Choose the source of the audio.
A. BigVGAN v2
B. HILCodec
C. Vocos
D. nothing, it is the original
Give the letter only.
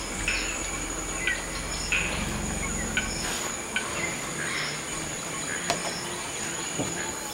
D